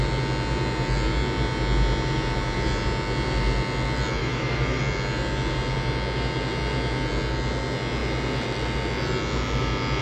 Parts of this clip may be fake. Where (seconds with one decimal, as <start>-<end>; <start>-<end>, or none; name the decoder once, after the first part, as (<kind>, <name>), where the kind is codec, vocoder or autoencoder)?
4.2-4.8 (autoencoder, DAC-VAE)